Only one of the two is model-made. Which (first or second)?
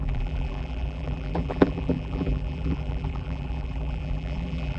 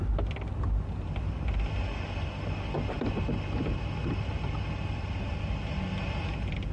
first